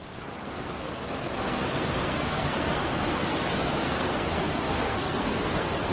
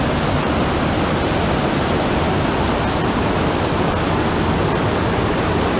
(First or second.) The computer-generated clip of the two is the first